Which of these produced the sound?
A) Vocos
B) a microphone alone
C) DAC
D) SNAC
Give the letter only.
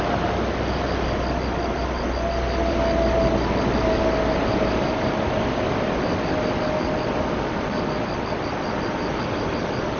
B